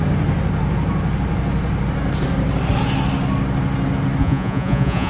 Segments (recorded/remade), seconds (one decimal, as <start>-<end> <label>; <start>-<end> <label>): 0.0-4.2 recorded; 4.2-5.1 remade